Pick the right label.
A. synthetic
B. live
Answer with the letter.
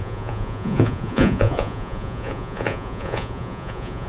A